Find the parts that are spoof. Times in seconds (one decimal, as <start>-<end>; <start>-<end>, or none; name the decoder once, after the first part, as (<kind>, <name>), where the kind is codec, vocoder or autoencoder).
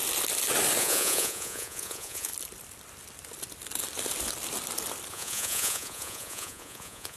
0.8-2.3 (vocoder, Vocos); 5.1-7.2